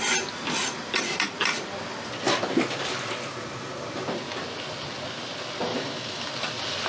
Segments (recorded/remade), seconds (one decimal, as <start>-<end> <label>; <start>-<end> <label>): 0.0-5.7 recorded; 5.7-6.3 remade; 6.3-6.9 recorded